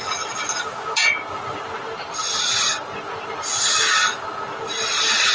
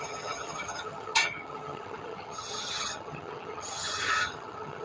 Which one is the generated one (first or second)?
second